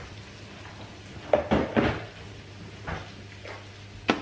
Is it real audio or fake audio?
real